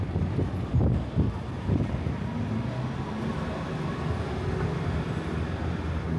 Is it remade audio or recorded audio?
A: recorded